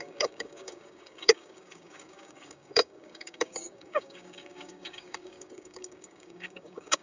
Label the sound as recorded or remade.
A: remade